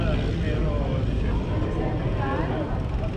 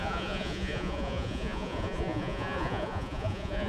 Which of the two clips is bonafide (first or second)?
first